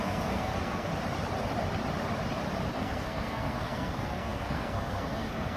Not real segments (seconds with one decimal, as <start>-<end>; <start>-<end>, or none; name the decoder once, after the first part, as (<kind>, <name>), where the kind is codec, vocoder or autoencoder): 0.0-0.9 (codec, SNAC); 2.8-5.6